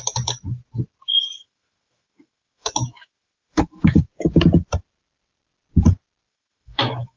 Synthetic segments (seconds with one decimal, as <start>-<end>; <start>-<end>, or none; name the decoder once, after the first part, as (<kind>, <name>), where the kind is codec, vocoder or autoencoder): 1.4-4.0 (autoencoder, DAC-VAE); 6.3-7.2